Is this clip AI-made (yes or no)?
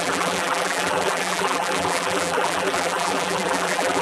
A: yes